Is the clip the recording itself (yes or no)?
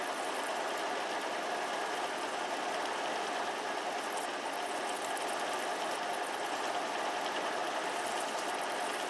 yes